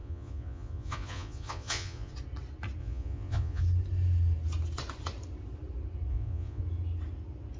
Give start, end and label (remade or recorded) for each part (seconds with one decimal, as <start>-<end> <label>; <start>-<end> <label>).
0.0-2.1 remade; 2.1-2.8 recorded; 2.8-3.6 remade; 3.6-6.1 recorded; 6.1-6.6 remade; 6.6-7.6 recorded